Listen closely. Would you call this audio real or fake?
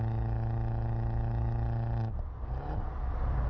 real